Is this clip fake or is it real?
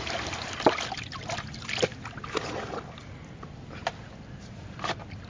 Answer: real